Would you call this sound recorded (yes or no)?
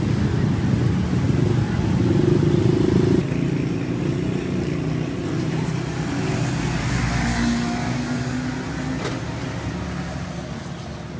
yes